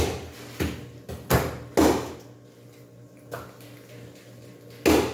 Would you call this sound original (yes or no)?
yes